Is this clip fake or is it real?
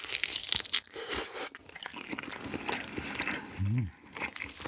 real